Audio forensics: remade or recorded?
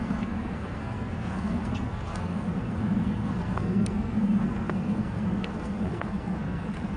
remade